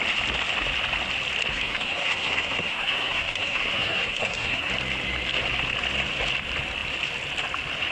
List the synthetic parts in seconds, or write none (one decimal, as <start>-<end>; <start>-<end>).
1.5-4.7